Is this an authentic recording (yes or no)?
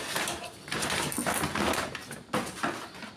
yes